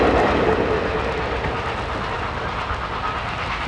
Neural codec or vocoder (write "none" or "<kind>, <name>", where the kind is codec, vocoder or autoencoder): none